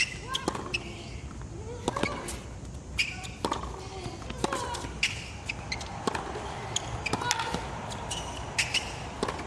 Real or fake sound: real